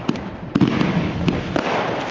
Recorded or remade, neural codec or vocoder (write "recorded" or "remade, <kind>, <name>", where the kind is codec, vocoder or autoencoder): recorded